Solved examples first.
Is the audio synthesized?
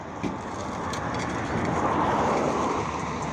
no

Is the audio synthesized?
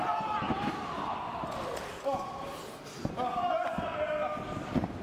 no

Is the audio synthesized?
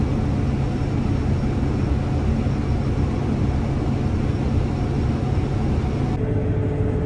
no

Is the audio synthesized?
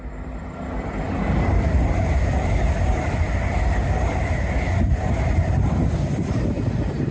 no